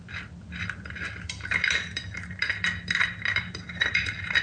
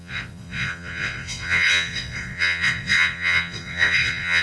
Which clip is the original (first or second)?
first